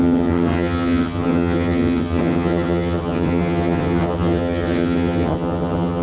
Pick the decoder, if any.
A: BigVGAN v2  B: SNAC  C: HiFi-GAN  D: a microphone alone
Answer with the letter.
C